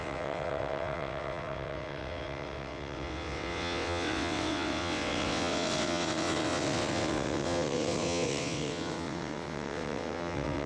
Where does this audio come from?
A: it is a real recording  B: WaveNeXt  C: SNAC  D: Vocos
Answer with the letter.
B